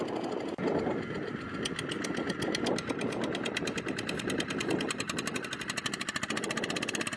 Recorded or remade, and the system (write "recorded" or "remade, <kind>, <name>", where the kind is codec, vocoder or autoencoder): recorded